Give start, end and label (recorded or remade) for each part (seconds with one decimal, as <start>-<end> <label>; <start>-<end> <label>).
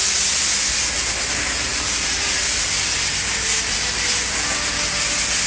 0.0-5.5 recorded